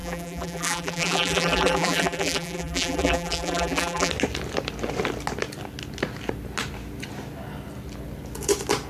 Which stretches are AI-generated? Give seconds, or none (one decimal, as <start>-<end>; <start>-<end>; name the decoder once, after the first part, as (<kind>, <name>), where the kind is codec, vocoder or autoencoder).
0.0-4.1 (vocoder, BigVGAN v2)

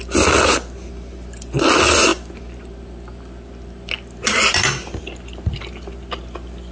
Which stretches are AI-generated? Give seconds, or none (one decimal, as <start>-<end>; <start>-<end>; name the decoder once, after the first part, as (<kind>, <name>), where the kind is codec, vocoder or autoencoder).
none

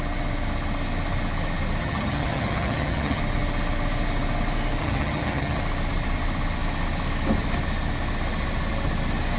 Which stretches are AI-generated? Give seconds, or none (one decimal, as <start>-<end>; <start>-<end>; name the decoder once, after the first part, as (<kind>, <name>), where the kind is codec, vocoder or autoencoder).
1.8-3.2 (vocoder, HiFi-GAN); 4.8-5.6

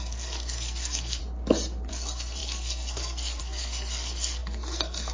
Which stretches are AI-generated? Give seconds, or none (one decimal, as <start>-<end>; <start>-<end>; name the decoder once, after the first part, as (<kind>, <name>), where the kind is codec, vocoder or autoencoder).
0.0-1.2 (codec, SNAC); 1.9-5.1

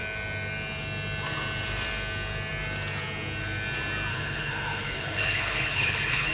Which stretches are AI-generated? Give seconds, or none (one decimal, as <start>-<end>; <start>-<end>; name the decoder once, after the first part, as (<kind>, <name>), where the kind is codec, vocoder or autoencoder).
4.1-6.3 (codec, HILCodec)

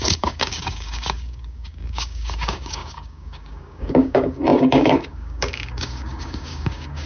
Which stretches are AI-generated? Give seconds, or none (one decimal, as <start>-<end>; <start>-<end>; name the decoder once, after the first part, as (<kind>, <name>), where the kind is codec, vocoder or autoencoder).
0.0-7.1 (codec, DAC)